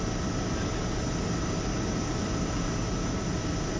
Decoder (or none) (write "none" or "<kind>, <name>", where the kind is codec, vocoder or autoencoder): none